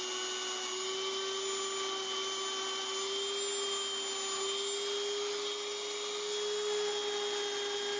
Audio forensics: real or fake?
real